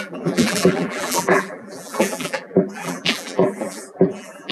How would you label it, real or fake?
fake